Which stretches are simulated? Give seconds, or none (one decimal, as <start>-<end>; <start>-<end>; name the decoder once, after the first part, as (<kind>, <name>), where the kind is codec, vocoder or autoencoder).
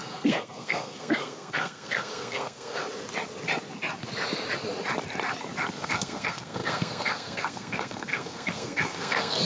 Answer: 0.0-2.8 (codec, SNAC); 5.8-9.4